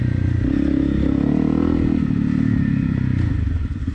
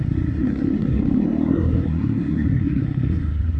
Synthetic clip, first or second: second